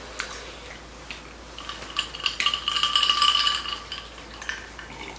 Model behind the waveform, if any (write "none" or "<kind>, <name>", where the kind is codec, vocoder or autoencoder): none